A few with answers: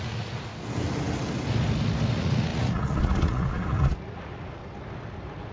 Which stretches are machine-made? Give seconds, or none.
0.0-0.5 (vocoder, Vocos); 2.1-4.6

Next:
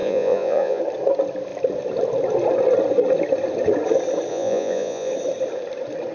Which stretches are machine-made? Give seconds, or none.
0.0-0.8 (vocoder, Vocos); 4.3-5.1

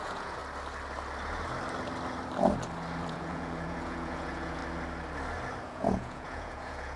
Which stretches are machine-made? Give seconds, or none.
0.0-0.4 (vocoder, Vocos); 3.0-4.6; 5.6-7.0

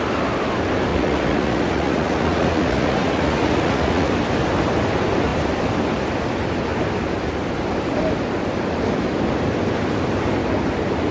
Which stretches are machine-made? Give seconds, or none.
0.9-4.1 (vocoder, Vocos)

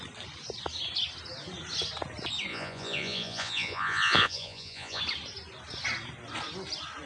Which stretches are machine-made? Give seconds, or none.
2.5-5.0 (vocoder, Vocos)

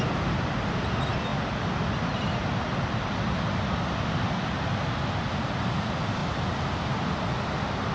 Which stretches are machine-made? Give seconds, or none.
none

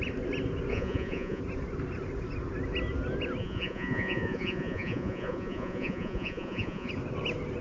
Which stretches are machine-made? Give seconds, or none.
0.7-1.4 (vocoder, Vocos); 3.4-6.9

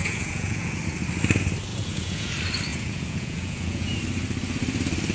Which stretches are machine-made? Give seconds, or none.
0.0-0.8 (vocoder, Vocos); 1.7-2.3; 2.7-4.0